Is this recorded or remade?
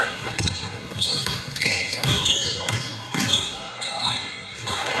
remade